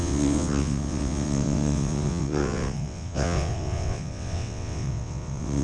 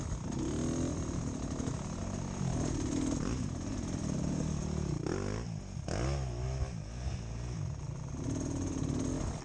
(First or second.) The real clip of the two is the second